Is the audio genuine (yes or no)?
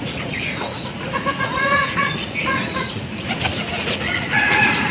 no